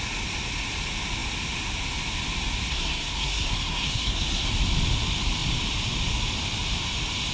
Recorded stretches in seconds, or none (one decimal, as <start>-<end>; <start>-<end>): 0.0-2.7; 4.5-7.3